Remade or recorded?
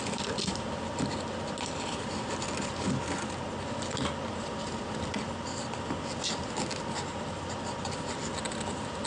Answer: recorded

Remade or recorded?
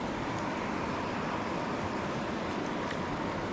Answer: recorded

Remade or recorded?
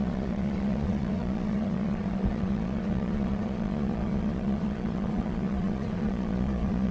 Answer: remade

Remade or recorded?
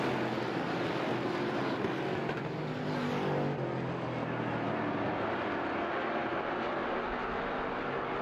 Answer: recorded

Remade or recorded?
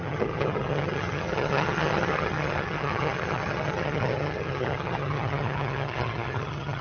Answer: remade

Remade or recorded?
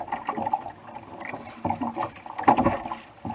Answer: recorded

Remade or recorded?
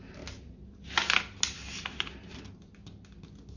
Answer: recorded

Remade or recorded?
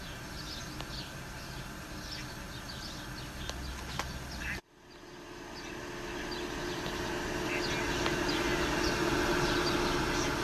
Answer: recorded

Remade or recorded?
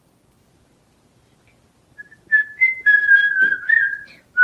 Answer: recorded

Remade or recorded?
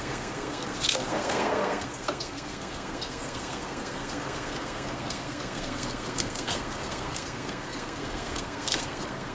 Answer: remade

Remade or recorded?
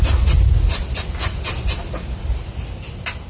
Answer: recorded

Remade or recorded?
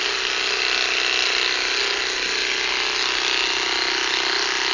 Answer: recorded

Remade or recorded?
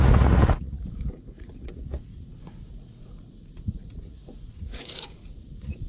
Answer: remade